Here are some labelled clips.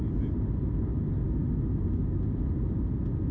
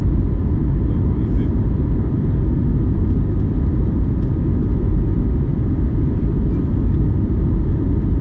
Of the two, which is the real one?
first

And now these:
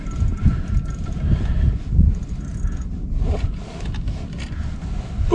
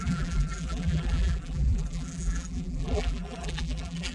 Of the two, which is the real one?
first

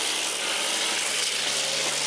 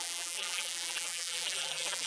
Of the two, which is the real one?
first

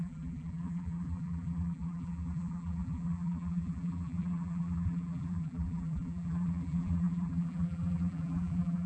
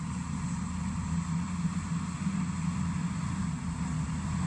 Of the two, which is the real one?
second